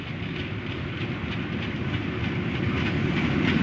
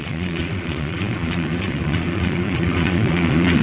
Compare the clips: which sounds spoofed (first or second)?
second